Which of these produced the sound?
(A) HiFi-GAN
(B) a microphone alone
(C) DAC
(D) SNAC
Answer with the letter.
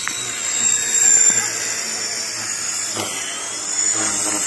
B